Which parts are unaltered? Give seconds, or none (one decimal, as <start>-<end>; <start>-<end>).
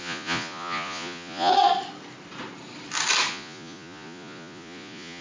1.5-3.3